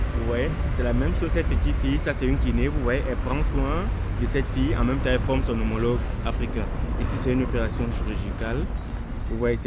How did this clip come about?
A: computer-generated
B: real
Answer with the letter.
B